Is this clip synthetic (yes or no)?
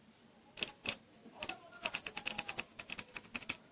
no